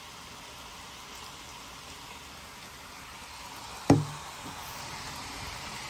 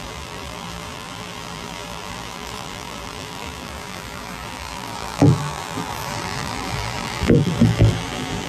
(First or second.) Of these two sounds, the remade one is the second